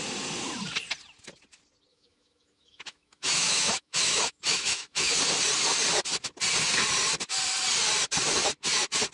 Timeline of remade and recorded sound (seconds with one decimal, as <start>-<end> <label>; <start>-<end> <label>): 0.0-1.9 recorded; 1.9-5.2 remade; 5.2-9.1 recorded